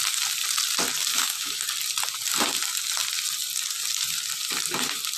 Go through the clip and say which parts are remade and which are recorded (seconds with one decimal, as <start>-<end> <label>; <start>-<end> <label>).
0.0-1.1 recorded; 1.1-1.6 remade; 1.6-5.2 recorded